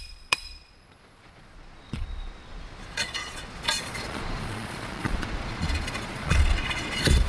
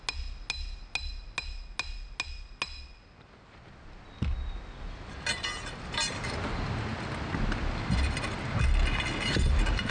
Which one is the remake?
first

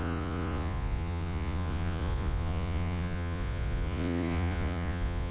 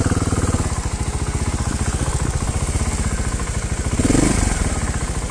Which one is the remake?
first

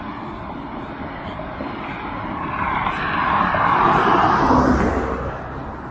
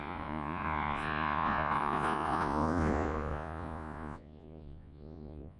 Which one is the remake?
second